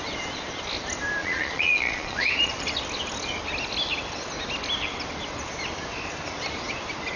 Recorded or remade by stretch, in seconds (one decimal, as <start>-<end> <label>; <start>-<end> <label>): 0.0-1.2 recorded; 1.2-2.6 remade; 2.6-7.2 recorded